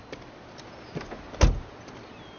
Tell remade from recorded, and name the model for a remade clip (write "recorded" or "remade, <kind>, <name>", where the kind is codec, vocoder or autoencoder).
recorded